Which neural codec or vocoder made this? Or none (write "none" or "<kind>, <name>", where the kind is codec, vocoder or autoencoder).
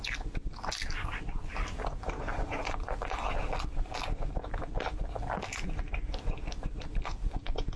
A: none